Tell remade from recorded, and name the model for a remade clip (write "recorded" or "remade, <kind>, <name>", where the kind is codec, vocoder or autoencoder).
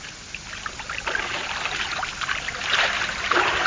remade, vocoder, BigVGAN v2